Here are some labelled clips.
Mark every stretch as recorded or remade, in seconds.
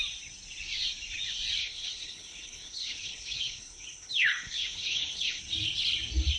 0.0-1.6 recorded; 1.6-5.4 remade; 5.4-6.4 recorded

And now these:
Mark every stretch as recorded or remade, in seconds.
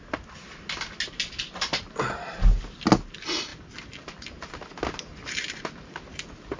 0.0-6.6 recorded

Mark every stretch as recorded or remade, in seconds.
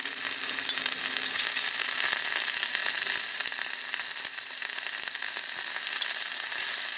0.0-2.8 recorded; 2.8-5.2 remade; 5.2-7.0 recorded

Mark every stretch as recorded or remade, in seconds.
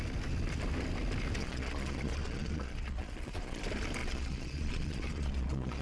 0.0-1.4 recorded; 1.4-3.6 remade; 3.6-4.0 recorded; 4.0-5.8 remade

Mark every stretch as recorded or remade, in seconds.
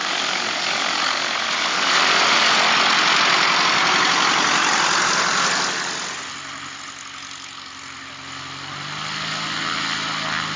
0.0-2.0 remade; 2.0-10.6 recorded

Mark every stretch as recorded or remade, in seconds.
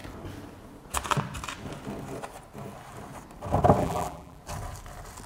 0.0-3.8 recorded; 3.8-4.4 remade; 4.4-5.3 recorded